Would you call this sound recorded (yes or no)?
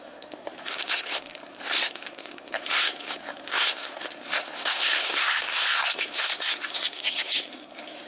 no